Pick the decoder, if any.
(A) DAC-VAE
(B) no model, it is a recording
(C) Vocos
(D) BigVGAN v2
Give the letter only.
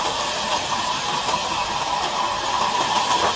D